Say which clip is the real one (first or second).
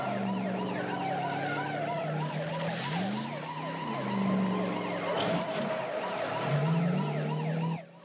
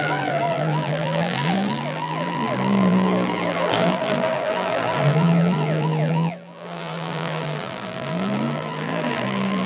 first